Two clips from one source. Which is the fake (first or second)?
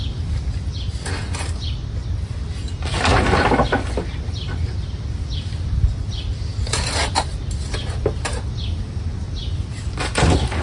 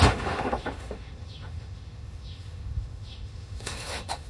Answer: second